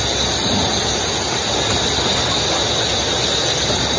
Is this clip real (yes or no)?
yes